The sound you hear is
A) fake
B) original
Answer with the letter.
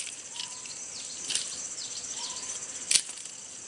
B